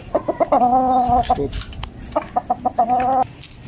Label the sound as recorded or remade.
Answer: recorded